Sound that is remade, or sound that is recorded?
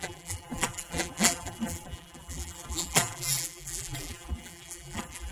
remade